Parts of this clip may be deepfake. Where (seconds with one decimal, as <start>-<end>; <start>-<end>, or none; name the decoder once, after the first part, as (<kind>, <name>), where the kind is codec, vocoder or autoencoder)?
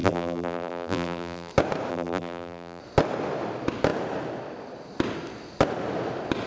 0.0-1.5 (vocoder, BigVGAN v2); 1.9-2.8